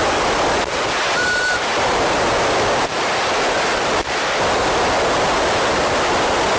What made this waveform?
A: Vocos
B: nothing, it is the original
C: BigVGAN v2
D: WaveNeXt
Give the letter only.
B